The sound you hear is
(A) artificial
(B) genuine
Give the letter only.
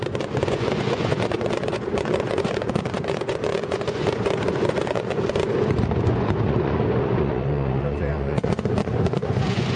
A